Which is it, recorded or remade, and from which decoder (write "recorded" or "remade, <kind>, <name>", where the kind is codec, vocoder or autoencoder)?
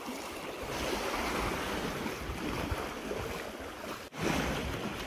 recorded